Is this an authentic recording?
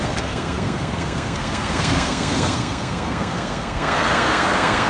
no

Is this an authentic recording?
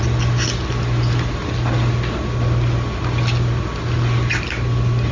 yes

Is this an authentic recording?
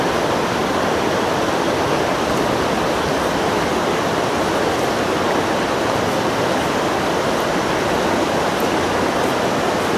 yes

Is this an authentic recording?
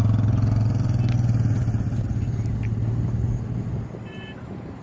yes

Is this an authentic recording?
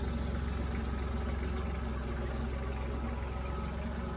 yes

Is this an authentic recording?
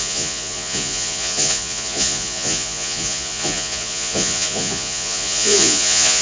no